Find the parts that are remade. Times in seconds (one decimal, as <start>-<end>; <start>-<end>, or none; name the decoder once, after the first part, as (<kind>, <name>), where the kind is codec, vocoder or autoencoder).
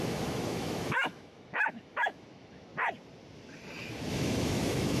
0.0-2.7 (autoencoder, DAC-VAE); 4.1-5.0